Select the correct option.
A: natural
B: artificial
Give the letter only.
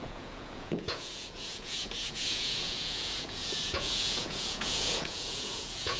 B